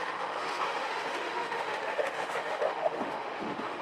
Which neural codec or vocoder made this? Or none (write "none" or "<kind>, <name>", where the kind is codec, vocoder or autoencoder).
autoencoder, DAC-VAE